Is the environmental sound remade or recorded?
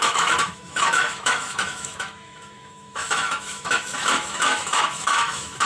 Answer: remade